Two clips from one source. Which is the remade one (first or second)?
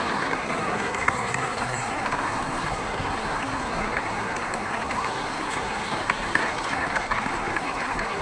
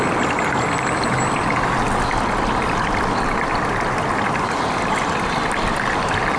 first